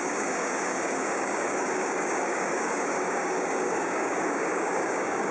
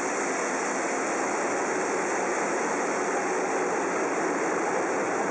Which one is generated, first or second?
first